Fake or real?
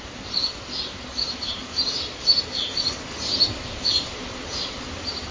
real